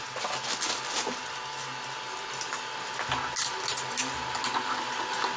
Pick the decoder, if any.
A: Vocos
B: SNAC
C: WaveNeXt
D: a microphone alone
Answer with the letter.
D